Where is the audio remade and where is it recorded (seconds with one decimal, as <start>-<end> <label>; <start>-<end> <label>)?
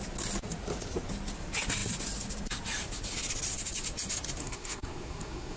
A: 0.0-4.4 recorded; 4.4-5.6 remade